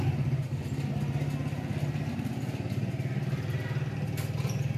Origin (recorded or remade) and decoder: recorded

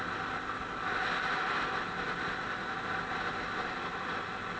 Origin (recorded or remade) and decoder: recorded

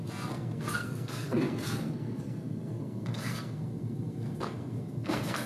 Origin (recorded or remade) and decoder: remade, codec, SNAC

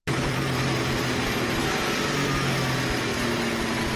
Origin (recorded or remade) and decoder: recorded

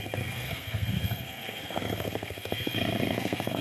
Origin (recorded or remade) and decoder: remade, codec, SNAC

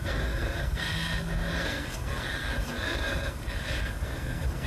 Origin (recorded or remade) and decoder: remade, codec, SNAC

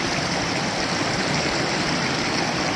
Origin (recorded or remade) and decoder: recorded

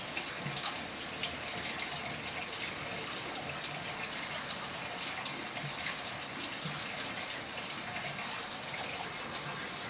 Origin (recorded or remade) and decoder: recorded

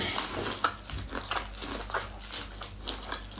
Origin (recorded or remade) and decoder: recorded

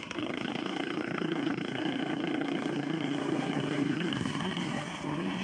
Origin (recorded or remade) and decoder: remade, codec, SNAC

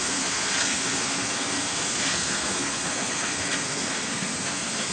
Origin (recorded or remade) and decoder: remade, codec, SNAC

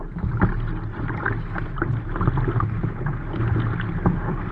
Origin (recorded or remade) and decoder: recorded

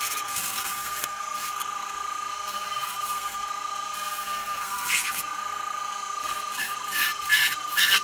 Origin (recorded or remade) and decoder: remade, codec, SNAC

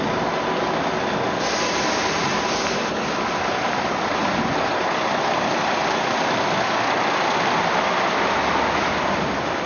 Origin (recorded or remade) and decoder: recorded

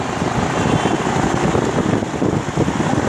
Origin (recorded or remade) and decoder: recorded